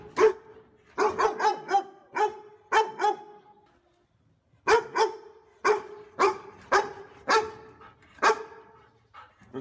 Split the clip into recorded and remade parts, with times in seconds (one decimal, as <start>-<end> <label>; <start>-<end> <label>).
0.0-9.6 recorded

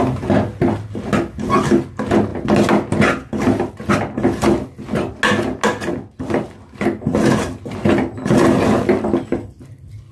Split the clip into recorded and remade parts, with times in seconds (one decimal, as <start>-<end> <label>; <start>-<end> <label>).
0.0-10.1 recorded

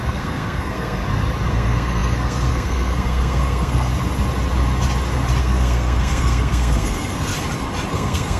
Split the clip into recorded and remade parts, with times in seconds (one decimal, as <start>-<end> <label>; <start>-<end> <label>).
0.0-1.0 remade; 1.0-1.5 recorded; 1.5-3.9 remade; 3.9-5.4 recorded; 5.4-7.3 remade; 7.3-7.9 recorded; 7.9-8.4 remade

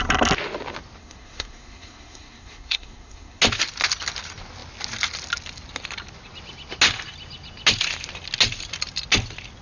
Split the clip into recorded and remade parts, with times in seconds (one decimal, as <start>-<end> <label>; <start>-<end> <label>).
0.0-1.0 recorded; 1.0-3.4 remade; 3.4-9.6 recorded

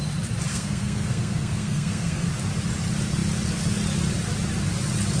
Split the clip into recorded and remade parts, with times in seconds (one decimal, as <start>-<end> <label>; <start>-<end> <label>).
0.0-0.5 recorded; 0.5-2.3 remade; 2.3-5.2 recorded

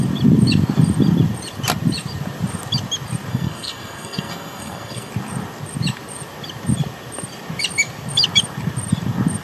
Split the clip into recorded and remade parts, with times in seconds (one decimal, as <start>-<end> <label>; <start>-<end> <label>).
0.0-3.3 recorded; 3.3-5.1 remade; 5.1-9.4 recorded

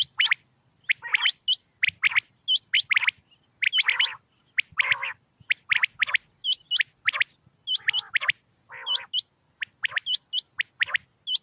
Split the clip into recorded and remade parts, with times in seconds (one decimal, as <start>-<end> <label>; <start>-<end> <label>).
0.0-11.4 recorded